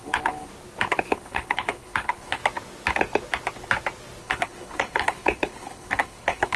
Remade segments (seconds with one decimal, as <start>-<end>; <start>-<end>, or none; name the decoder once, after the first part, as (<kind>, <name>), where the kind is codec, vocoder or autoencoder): 0.0-0.5 (codec, HILCodec); 1.1-2.4; 4.2-6.6